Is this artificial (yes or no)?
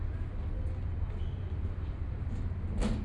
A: no